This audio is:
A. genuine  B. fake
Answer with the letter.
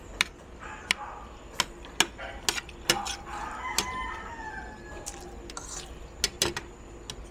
A